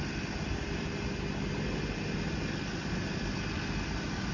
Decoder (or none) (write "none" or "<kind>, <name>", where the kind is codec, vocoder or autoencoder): none